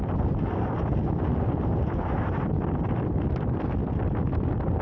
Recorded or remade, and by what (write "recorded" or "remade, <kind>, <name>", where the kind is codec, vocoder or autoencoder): recorded